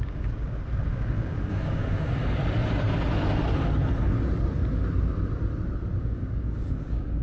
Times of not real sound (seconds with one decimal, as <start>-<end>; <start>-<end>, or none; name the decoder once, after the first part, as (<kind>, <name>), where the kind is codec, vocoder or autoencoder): 0.0-2.2 (codec, DAC); 6.0-7.2